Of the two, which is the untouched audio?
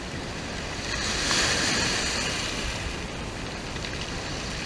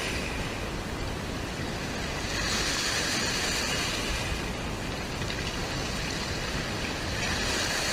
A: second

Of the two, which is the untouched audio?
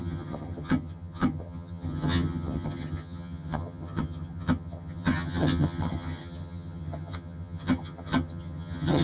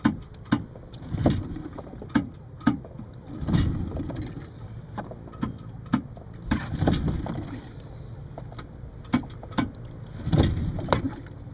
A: second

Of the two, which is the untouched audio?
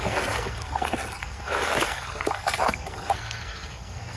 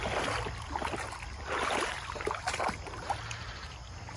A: second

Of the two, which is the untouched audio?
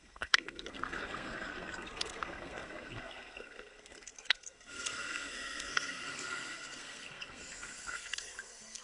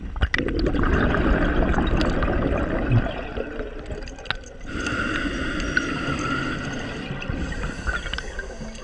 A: second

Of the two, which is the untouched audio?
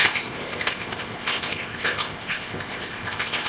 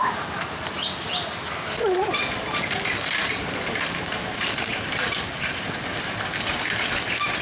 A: second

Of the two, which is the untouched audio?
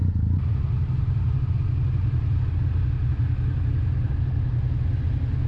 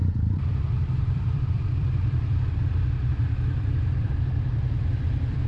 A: first